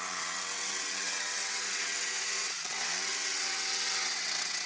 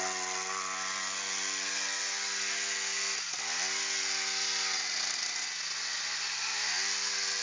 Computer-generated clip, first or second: first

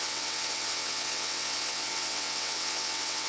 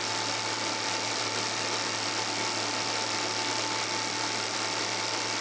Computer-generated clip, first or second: first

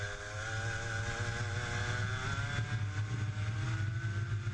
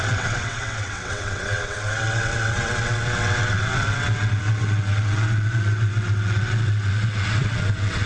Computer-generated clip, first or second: second